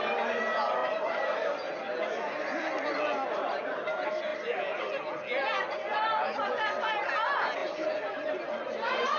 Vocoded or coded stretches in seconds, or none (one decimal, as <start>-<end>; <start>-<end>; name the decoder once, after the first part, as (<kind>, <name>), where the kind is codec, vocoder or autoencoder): 0.8-1.7 (vocoder, BigVGAN v2); 4.3-4.8; 7.6-9.2